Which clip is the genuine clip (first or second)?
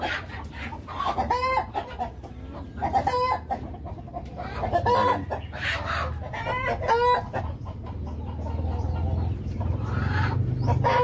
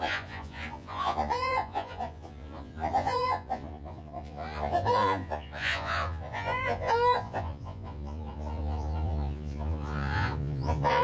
first